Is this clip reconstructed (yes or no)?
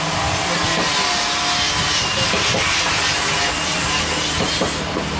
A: no